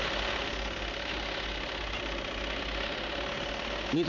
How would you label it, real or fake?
real